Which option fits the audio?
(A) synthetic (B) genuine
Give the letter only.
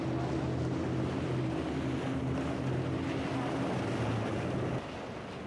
B